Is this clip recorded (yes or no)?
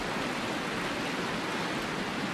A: yes